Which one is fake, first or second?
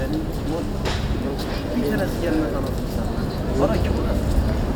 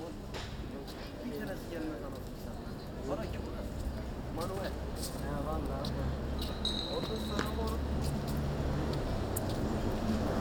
first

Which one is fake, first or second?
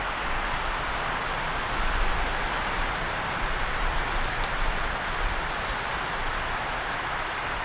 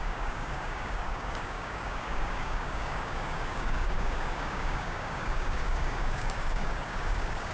second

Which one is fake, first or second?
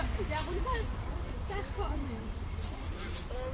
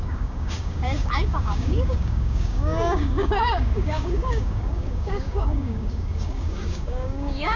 second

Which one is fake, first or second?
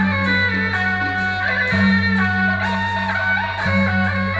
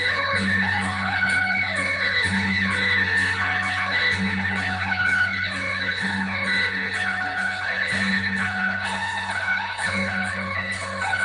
second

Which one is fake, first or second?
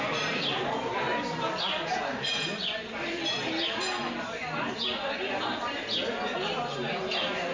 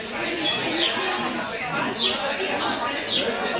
second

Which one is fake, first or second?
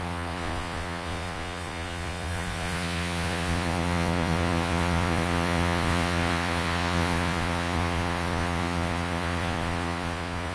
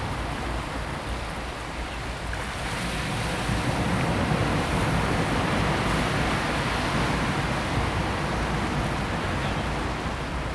first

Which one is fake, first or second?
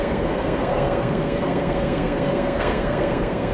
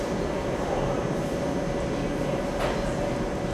first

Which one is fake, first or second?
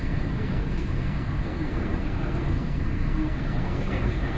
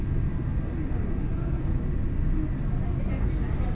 first